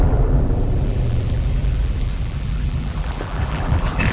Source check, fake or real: fake